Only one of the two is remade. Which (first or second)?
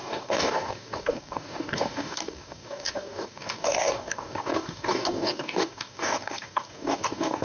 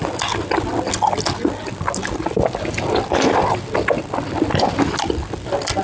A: first